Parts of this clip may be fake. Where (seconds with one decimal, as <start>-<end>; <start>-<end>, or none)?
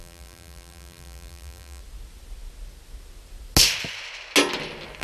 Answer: 0.0-1.8